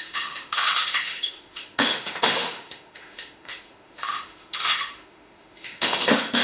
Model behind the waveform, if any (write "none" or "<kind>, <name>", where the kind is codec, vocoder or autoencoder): autoencoder, DAC-VAE